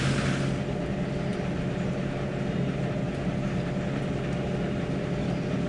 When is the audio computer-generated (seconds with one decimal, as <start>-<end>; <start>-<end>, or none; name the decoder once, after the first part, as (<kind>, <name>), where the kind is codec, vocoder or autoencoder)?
none